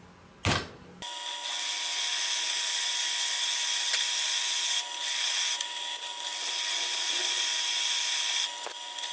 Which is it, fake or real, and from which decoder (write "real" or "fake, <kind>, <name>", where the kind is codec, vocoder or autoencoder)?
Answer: real